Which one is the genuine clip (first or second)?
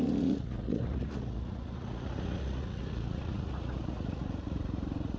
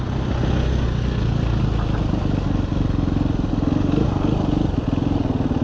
second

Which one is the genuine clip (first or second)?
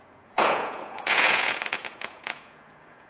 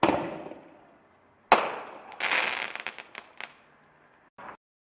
second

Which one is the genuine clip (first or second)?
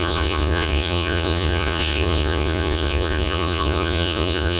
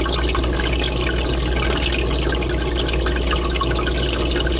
second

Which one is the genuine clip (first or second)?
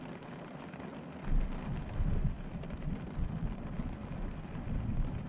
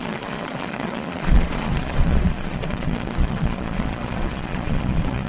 first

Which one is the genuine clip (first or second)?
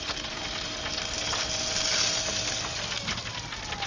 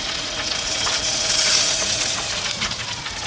first